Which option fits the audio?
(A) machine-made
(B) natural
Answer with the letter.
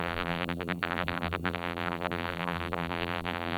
A